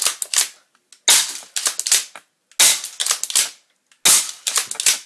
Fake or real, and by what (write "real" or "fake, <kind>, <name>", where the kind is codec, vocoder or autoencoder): real